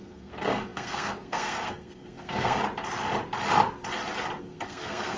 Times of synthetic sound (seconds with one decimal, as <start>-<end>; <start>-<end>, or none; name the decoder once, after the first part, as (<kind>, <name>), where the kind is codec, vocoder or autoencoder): 0.0-2.6 (codec, SNAC); 4.4-5.2